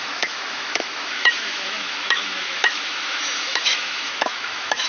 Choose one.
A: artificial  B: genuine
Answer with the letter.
A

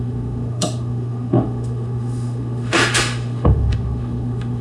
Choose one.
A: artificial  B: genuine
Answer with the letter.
A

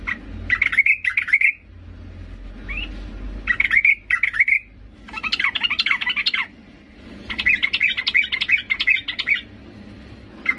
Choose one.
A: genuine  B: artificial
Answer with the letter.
A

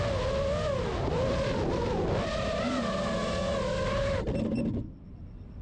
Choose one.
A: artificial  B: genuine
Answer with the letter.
B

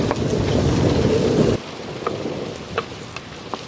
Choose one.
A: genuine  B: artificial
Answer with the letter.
A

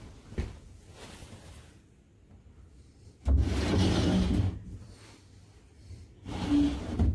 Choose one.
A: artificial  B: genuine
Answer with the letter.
B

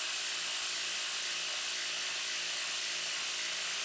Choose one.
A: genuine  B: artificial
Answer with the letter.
A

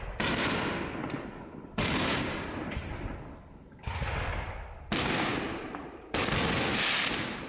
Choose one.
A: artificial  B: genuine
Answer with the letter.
B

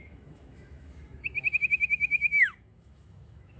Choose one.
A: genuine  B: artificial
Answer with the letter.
B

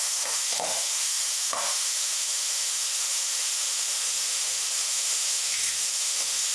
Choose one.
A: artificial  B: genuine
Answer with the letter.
A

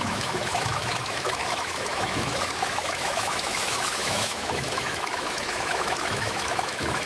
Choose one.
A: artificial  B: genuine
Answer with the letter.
A